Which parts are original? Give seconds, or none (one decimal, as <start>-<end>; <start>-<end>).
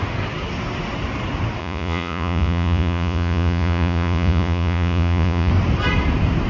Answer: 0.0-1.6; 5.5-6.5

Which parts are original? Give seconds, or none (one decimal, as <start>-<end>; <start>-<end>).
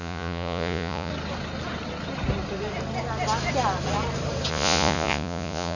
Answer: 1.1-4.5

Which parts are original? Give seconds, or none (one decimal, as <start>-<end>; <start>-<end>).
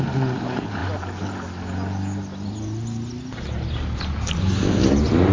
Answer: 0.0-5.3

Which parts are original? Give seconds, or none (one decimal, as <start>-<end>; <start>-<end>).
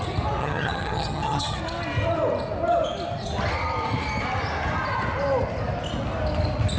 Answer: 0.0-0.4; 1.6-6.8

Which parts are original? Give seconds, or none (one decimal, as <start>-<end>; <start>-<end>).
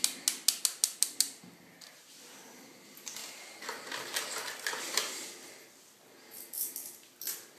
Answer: 0.0-7.6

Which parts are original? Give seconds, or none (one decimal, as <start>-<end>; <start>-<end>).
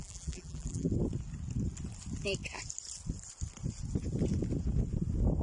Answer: 0.9-5.4